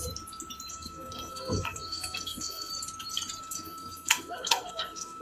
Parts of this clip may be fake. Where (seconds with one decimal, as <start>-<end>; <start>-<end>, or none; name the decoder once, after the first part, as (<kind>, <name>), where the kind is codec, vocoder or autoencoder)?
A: 0.7-2.7 (codec, SNAC); 3.4-5.2